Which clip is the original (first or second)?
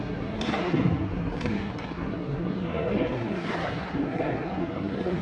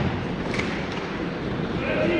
second